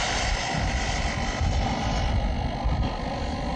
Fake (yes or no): no